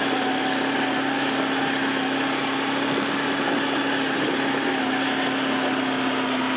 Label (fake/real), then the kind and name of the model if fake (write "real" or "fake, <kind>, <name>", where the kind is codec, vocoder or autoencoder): real